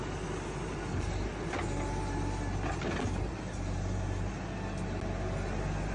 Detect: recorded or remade recorded